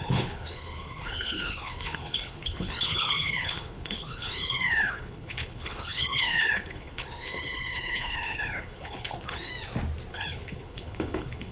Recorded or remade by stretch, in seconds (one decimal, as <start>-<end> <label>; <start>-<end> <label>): 0.0-9.5 remade; 9.5-10.1 recorded; 10.1-11.5 remade